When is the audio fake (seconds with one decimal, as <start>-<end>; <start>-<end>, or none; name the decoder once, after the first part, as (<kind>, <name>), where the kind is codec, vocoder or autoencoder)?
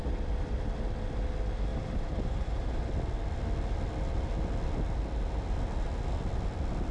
1.7-2.9 (vocoder, BigVGAN v2)